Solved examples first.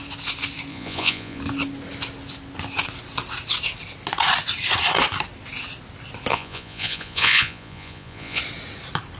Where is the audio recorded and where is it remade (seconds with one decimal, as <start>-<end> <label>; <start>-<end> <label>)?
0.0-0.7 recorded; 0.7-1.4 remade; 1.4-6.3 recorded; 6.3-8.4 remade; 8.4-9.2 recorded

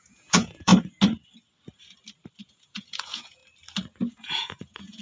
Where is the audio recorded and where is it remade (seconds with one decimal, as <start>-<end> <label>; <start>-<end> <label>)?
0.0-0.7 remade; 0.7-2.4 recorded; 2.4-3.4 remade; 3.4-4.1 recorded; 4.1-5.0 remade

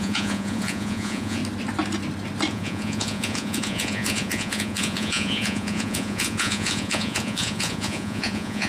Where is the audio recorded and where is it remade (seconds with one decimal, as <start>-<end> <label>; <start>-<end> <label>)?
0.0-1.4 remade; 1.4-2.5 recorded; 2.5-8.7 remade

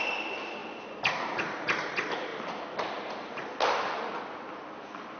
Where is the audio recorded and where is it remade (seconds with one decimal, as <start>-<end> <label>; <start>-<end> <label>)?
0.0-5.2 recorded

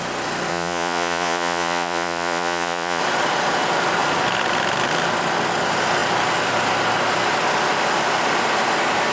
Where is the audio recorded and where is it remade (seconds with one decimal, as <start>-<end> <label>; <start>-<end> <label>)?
0.0-0.5 recorded; 0.5-3.0 remade; 3.0-9.1 recorded

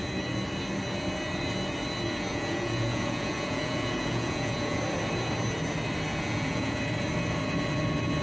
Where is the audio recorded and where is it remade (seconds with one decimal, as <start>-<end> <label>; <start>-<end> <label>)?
0.0-2.3 recorded; 2.3-4.8 remade; 4.8-6.1 recorded; 6.1-6.8 remade; 6.8-8.2 recorded

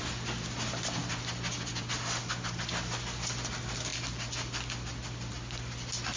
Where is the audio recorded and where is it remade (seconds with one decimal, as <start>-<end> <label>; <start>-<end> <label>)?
0.0-6.2 recorded